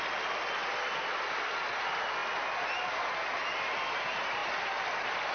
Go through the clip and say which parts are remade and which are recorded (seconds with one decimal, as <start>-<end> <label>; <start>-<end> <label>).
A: 0.0-4.4 recorded; 4.4-5.3 remade